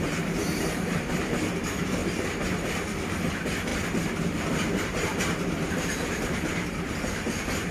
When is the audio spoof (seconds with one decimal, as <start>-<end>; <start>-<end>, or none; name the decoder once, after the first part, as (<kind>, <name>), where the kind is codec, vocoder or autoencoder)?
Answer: 0.0-2.0 (vocoder, BigVGAN v2); 3.3-7.7